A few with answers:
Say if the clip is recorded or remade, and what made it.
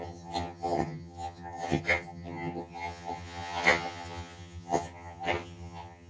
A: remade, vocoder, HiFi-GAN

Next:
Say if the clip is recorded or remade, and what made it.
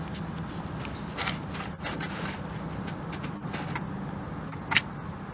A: recorded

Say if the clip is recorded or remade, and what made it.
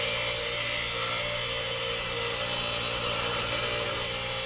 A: recorded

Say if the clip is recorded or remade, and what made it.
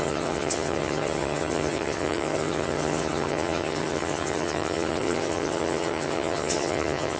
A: remade, vocoder, HiFi-GAN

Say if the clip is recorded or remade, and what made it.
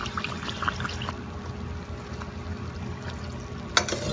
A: recorded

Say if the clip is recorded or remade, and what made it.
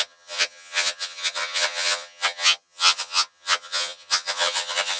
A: remade, vocoder, HiFi-GAN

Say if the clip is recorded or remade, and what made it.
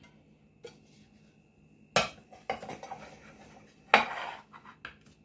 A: recorded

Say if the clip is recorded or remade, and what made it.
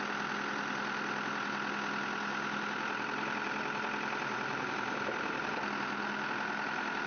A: recorded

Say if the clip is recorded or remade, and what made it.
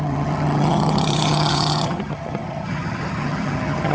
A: remade, vocoder, HiFi-GAN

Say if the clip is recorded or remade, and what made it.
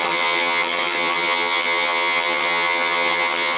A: remade, vocoder, HiFi-GAN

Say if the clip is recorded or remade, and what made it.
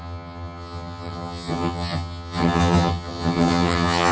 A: remade, vocoder, HiFi-GAN